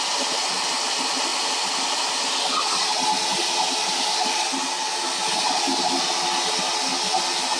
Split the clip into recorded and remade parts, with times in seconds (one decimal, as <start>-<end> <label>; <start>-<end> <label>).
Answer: 0.0-7.6 recorded

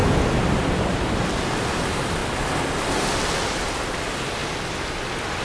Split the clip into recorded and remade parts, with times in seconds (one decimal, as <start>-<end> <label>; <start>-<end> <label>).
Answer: 0.0-1.2 remade; 1.2-4.4 recorded; 4.4-4.9 remade; 4.9-5.4 recorded

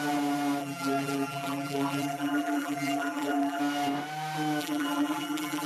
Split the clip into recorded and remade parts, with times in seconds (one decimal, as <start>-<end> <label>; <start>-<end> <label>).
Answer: 0.0-0.6 recorded; 0.6-3.6 remade; 3.6-4.6 recorded; 4.6-5.7 remade

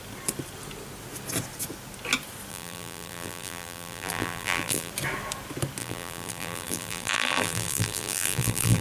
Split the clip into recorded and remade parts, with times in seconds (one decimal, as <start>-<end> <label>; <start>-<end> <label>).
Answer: 0.0-2.5 recorded; 2.5-4.9 remade; 4.9-5.8 recorded; 5.8-8.8 remade